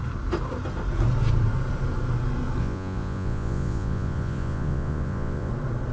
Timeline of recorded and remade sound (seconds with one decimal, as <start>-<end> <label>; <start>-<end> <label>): 0.0-2.6 recorded; 2.6-5.5 remade; 5.5-5.9 recorded